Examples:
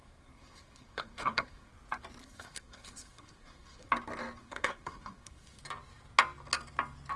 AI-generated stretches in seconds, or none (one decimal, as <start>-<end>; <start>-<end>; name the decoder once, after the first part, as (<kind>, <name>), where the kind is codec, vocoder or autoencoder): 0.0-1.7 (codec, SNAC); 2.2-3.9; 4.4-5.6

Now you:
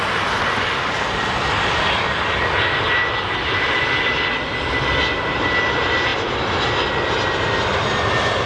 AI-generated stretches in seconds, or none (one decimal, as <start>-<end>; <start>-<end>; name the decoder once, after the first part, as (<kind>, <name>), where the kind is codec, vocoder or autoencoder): none

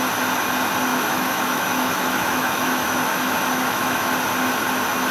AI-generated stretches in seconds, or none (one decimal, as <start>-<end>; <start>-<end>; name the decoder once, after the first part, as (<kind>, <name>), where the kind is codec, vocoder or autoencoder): 0.9-4.0 (autoencoder, DAC-VAE)

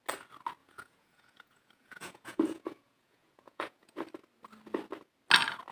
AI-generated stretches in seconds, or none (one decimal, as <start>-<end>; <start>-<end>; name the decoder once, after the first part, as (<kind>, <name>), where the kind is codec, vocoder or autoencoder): 0.6-4.0 (vocoder, Vocos)

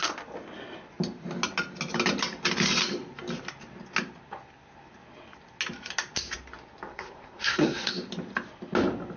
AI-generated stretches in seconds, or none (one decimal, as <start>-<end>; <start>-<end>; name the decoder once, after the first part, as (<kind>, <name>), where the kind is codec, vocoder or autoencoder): 6.9-7.9 (codec, SNAC)

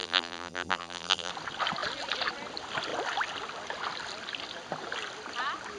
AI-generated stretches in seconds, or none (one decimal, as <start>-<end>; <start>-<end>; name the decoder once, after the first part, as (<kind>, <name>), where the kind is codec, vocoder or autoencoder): 0.0-1.3 (vocoder, BigVGAN v2)

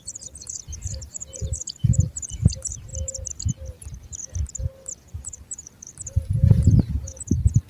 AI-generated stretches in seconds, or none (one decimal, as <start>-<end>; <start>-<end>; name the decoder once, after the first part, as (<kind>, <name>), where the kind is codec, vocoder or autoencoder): 0.0-2.9 (vocoder, BigVGAN v2); 4.9-7.7